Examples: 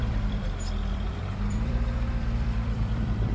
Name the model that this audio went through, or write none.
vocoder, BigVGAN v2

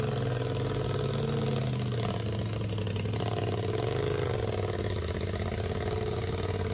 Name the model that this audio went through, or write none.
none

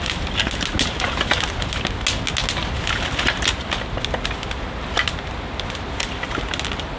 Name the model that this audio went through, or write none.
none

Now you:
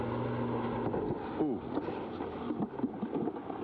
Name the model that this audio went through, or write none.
none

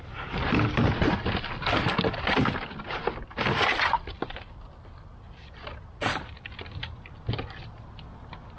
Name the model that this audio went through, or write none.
none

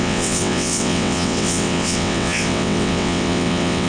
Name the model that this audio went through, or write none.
vocoder, WaveNeXt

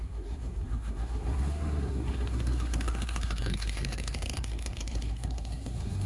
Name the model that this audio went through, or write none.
codec, SNAC